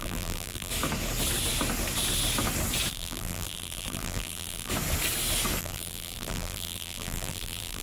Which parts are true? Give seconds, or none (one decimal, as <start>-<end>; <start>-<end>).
0.7-2.9; 4.7-5.6